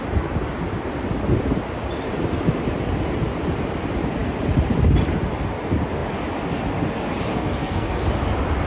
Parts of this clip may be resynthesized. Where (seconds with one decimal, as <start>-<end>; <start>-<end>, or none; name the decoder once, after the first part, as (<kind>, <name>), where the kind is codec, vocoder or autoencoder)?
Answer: 7.3-8.0 (codec, SNAC)